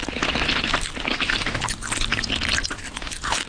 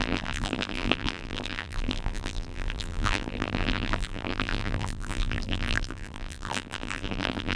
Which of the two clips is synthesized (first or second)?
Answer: second